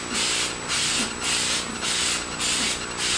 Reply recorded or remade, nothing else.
recorded